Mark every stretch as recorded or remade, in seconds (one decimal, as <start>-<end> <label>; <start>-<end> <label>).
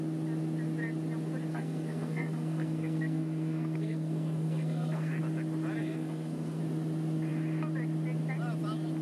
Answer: 0.0-1.5 recorded; 1.5-5.2 remade; 5.2-5.8 recorded; 5.8-6.6 remade; 6.6-9.0 recorded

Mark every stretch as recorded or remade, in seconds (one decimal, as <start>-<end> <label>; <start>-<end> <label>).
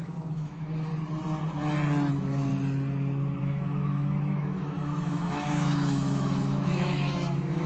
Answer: 0.0-0.9 remade; 0.9-2.1 recorded; 2.1-2.5 remade; 2.5-3.4 recorded; 3.4-7.7 remade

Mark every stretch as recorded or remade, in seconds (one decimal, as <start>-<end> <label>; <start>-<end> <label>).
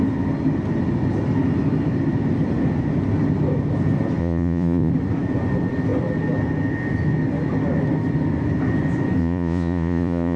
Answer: 0.0-4.2 recorded; 4.2-4.9 remade; 4.9-9.2 recorded; 9.2-10.4 remade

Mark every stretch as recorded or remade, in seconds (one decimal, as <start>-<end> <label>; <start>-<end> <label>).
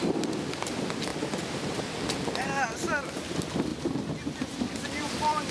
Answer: 0.0-5.5 recorded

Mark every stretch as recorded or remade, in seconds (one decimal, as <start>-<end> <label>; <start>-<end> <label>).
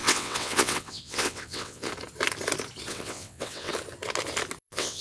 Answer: 0.0-1.9 remade; 1.9-2.9 recorded; 2.9-3.7 remade; 3.7-4.6 recorded; 4.6-5.0 remade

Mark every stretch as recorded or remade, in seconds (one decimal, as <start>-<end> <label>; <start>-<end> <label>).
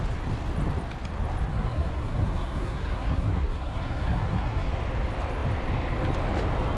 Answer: 0.0-1.5 recorded; 1.5-4.7 remade; 4.7-6.8 recorded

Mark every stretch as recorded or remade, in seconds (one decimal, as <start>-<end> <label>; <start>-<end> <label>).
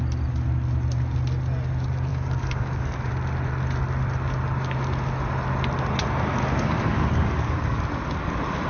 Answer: 0.0-2.1 recorded; 2.1-3.1 remade; 3.1-6.5 recorded; 6.5-7.8 remade; 7.8-8.7 recorded